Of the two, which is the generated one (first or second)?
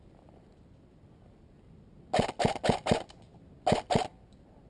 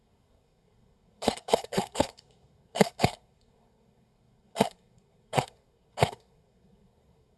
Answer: second